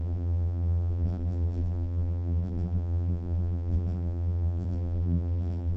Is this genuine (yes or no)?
no